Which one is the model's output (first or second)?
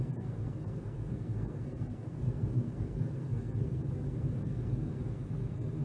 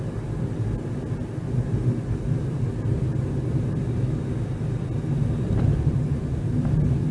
first